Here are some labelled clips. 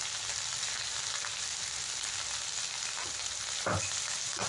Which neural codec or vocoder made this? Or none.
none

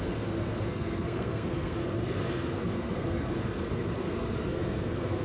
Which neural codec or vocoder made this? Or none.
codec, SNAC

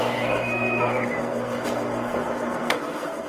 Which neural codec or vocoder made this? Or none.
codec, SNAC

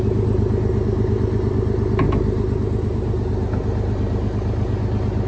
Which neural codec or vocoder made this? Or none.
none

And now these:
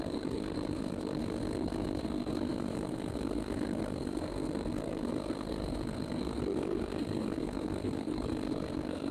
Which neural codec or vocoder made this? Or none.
codec, SNAC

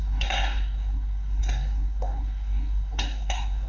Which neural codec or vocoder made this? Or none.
codec, SNAC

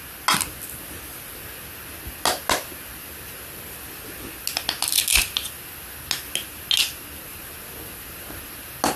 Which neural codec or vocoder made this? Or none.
none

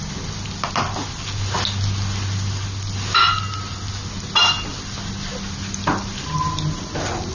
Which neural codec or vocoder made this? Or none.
none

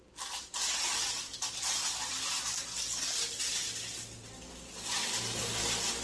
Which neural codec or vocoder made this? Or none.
none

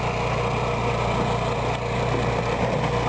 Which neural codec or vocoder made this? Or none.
none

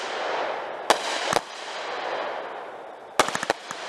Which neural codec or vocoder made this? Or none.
none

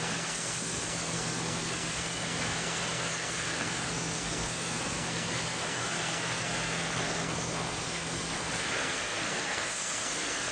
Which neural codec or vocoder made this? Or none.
codec, SNAC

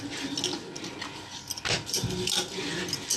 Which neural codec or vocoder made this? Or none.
none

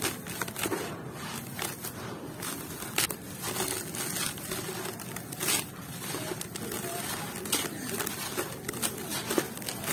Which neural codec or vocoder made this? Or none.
none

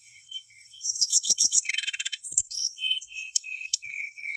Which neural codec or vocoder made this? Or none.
codec, SNAC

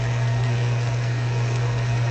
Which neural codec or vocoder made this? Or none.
codec, SNAC